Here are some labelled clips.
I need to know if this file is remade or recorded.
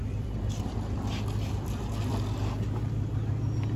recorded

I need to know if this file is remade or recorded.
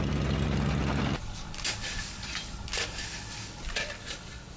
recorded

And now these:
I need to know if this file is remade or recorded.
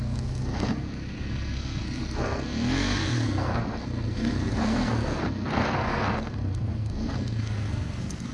remade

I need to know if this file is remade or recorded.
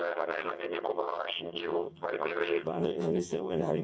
remade